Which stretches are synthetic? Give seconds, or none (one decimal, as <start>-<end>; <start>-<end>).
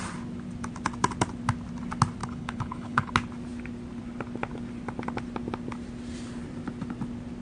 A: 2.2-3.1